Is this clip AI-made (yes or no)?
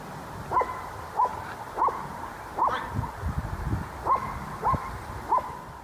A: no